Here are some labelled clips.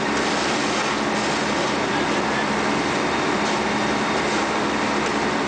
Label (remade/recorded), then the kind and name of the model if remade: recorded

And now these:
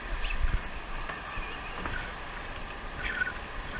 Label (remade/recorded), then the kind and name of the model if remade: recorded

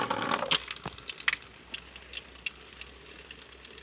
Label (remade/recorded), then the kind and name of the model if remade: recorded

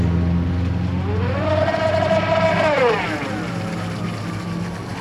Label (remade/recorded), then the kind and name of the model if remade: recorded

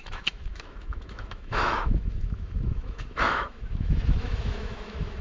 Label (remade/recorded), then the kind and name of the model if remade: remade, autoencoder, DAC-VAE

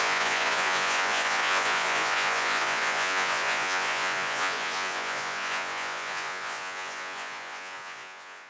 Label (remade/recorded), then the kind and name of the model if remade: remade, vocoder, Vocos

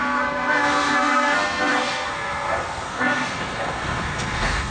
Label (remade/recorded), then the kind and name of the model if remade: remade, codec, SNAC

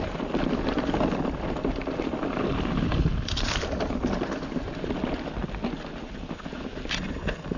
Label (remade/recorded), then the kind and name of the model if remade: recorded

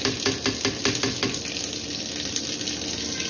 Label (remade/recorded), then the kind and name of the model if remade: recorded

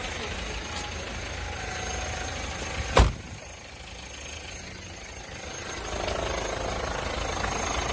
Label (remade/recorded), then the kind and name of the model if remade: recorded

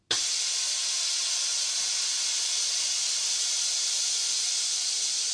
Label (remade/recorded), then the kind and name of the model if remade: recorded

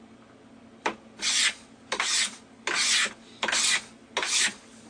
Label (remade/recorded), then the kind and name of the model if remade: recorded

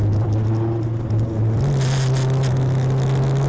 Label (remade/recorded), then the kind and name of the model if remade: recorded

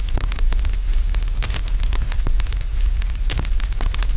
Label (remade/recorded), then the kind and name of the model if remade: remade, vocoder, BigVGAN v2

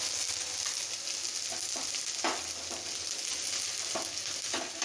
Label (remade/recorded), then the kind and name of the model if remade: recorded